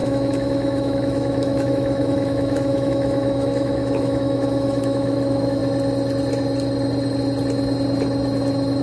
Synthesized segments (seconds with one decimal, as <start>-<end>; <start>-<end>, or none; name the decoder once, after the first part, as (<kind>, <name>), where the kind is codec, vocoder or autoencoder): 0.0-5.6 (autoencoder, DAC-VAE)